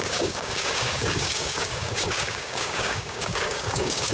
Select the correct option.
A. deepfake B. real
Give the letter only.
A